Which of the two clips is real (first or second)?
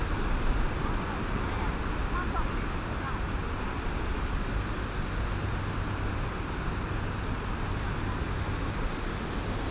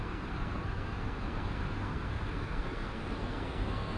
first